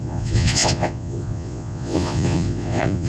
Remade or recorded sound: remade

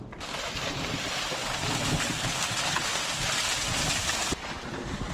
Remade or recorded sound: recorded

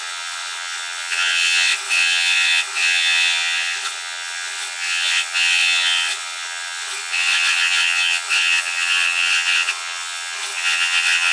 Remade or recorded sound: remade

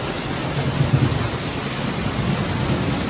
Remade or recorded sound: recorded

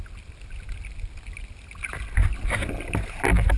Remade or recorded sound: recorded